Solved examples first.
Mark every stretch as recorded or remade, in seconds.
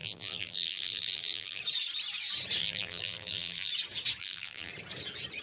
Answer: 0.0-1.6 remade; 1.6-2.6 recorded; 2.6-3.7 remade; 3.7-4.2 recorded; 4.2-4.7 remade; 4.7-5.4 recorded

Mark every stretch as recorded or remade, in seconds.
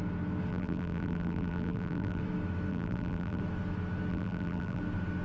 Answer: 0.0-0.5 recorded; 0.5-2.2 remade; 2.2-2.7 recorded; 2.7-3.4 remade; 3.4-4.1 recorded; 4.1-4.8 remade; 4.8-5.2 recorded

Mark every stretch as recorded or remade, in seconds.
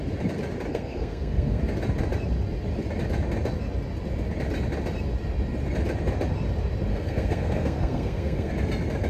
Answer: 0.0-0.7 recorded; 0.7-1.6 remade; 1.6-6.9 recorded; 6.9-8.5 remade; 8.5-9.1 recorded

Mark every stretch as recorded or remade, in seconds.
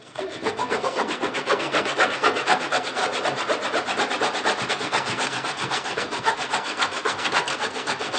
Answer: 0.0-3.0 remade; 3.0-4.7 recorded; 4.7-8.2 remade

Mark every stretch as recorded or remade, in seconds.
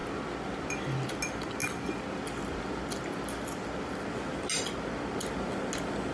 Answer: 0.0-6.1 recorded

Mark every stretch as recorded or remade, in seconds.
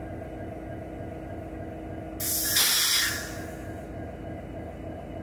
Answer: 0.0-5.2 recorded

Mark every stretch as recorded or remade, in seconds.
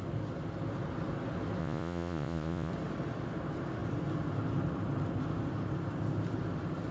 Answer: 0.0-1.6 recorded; 1.6-2.7 remade; 2.7-6.9 recorded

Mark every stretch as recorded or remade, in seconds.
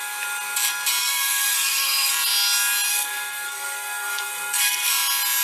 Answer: 0.0-1.0 recorded; 1.0-2.1 remade; 2.1-2.9 recorded; 2.9-4.9 remade; 4.9-5.4 recorded